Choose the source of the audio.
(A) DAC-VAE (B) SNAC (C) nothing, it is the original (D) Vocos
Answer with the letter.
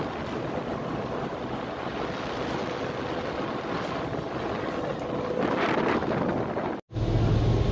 C